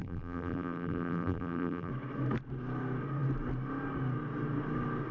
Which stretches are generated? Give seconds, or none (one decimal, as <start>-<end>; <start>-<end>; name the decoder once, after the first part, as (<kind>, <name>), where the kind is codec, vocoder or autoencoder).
0.0-1.9 (vocoder, BigVGAN v2)